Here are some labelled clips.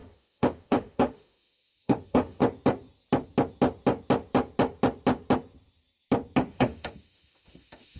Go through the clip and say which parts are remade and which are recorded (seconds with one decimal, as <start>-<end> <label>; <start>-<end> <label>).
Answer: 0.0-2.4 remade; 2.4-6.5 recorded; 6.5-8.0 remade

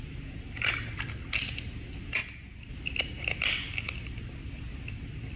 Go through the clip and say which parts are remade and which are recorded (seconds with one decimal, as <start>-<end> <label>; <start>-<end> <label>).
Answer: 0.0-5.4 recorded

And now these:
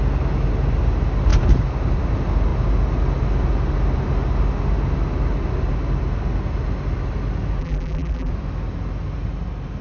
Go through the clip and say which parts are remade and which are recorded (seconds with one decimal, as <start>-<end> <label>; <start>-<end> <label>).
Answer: 0.0-7.6 recorded; 7.6-8.3 remade; 8.3-9.8 recorded

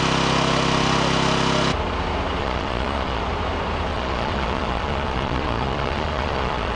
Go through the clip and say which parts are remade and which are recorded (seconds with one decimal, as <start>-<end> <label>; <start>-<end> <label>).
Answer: 0.0-2.4 recorded; 2.4-3.2 remade; 3.2-3.9 recorded; 3.9-6.8 remade

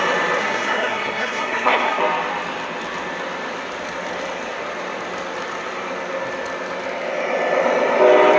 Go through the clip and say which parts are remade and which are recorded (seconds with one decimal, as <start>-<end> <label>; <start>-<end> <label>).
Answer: 0.0-0.4 recorded; 0.4-2.0 remade; 2.0-8.4 recorded